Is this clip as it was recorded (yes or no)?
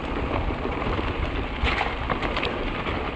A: yes